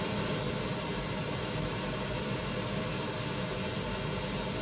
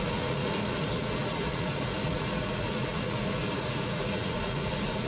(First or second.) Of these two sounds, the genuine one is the first